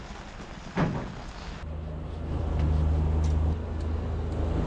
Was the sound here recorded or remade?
recorded